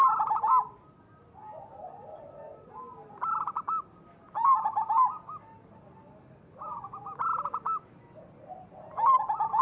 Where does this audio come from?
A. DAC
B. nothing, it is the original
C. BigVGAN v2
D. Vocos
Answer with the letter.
B